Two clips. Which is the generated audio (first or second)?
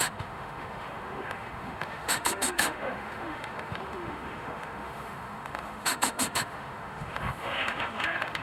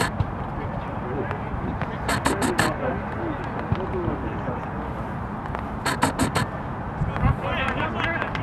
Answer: first